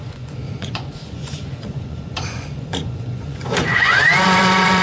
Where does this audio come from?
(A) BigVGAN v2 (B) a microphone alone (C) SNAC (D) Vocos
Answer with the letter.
D